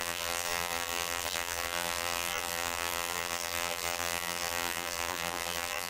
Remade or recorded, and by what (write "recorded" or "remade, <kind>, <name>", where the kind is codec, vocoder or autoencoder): remade, vocoder, BigVGAN v2